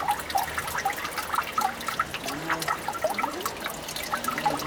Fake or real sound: real